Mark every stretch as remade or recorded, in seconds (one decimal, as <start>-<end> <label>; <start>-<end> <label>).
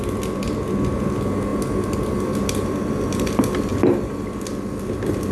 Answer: 0.0-5.3 recorded